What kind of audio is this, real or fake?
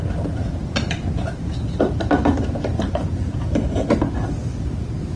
real